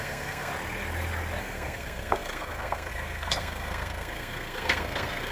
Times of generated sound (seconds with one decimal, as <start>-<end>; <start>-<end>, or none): 0.0-0.5; 1.4-5.3

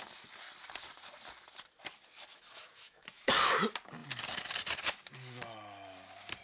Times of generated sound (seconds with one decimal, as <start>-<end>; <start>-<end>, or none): 2.3-3.3

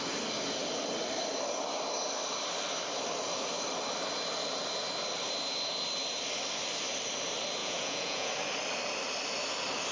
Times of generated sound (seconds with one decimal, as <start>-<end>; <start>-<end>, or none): 7.6-8.3